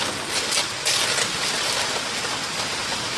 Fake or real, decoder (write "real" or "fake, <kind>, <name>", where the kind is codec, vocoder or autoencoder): real